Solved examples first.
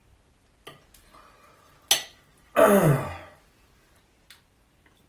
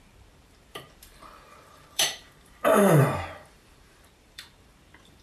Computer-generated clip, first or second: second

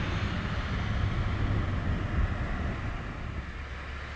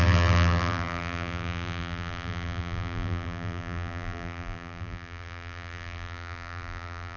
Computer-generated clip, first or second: second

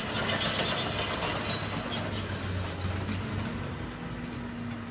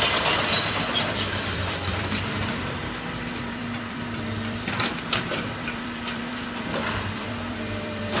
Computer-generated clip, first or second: second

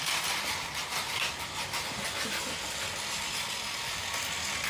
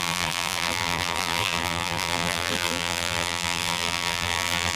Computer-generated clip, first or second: second